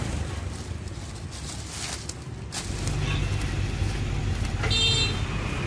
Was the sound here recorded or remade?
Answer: recorded